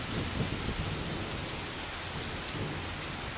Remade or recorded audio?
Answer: recorded